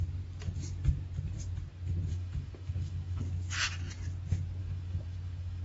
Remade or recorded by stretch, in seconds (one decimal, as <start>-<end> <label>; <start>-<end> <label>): 0.0-2.1 recorded; 2.1-3.2 remade; 3.2-4.6 recorded; 4.6-5.6 remade

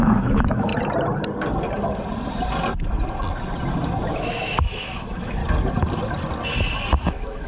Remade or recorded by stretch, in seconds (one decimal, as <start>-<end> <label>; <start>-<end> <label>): 0.0-0.7 remade; 0.7-4.1 recorded; 4.1-5.4 remade; 5.4-7.1 recorded; 7.1-7.5 remade

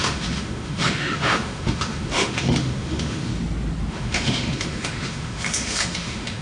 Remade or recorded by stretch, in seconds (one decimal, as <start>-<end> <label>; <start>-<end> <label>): 0.0-3.3 remade; 3.3-3.9 recorded; 3.9-6.4 remade

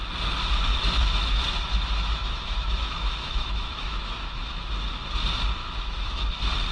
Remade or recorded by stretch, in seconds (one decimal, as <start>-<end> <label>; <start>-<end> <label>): 0.0-0.7 recorded; 0.7-4.7 remade; 4.7-5.6 recorded; 5.6-6.3 remade; 6.3-6.7 recorded